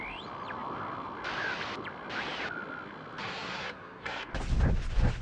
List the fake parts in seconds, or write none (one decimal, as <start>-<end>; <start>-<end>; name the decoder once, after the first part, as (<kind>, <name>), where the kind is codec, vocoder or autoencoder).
3.2-4.3 (codec, SNAC)